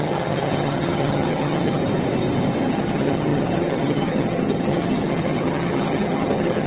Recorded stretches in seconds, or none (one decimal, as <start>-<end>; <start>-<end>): 1.8-2.7